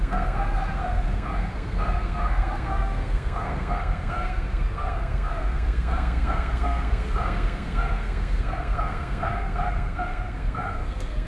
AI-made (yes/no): yes